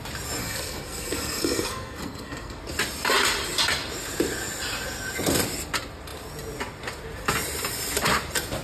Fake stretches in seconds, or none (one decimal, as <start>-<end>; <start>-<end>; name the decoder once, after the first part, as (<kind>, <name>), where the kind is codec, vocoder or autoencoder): 0.4-2.6 (codec, SNAC)